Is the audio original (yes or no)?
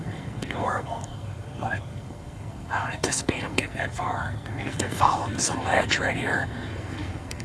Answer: no